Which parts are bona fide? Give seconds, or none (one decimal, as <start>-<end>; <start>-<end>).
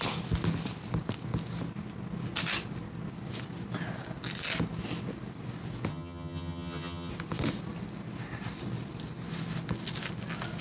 0.0-5.9; 7.1-10.6